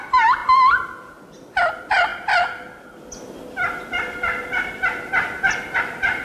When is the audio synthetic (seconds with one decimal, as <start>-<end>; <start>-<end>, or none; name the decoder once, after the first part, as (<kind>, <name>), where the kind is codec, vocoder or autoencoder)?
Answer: 0.0-2.1 (vocoder, BigVGAN v2); 5.8-6.2